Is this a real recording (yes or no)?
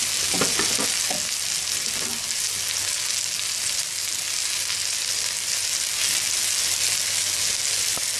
yes